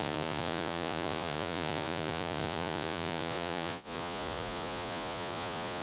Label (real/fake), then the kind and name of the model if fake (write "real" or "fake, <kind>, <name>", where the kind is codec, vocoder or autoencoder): fake, vocoder, Vocos